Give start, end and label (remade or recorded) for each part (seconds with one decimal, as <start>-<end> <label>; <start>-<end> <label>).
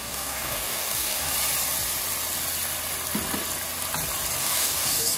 0.0-1.3 remade; 1.3-4.4 recorded; 4.4-5.2 remade